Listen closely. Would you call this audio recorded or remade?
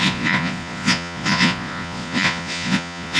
remade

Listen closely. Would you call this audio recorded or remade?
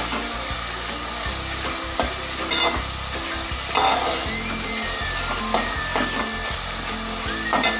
recorded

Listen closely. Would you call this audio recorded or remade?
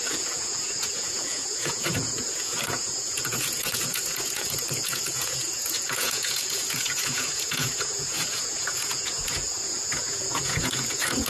remade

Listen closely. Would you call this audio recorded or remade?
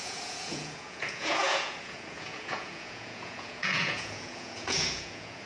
remade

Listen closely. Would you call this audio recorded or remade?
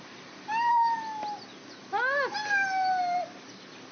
recorded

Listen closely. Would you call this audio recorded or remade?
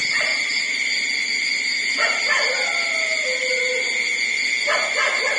recorded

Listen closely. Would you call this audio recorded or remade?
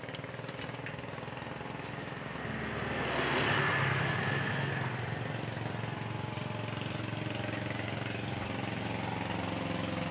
recorded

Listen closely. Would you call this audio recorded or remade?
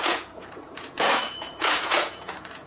remade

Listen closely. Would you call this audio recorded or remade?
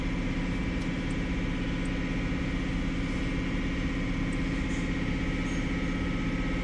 recorded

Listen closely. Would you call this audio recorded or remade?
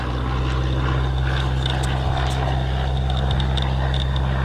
recorded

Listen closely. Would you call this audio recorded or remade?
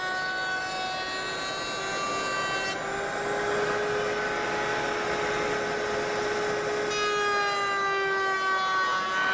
recorded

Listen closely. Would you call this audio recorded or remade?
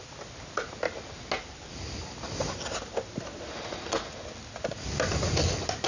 recorded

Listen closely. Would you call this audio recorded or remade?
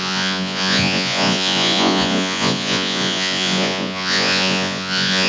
remade